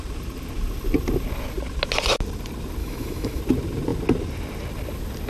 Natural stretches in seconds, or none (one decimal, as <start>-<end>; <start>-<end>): 0.0-2.8; 3.4-5.3